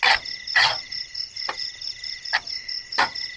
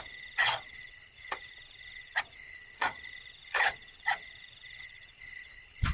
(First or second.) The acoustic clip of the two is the first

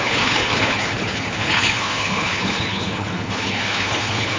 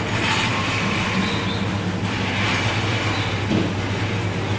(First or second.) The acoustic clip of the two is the second